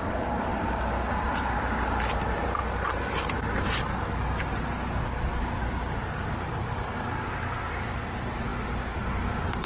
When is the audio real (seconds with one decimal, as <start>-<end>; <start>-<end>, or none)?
0.5-1.1; 2.6-7.7; 8.5-9.7